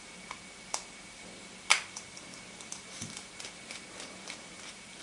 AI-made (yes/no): yes